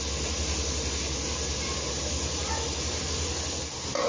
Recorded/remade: recorded